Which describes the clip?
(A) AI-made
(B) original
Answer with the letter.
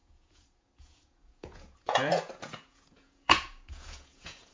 A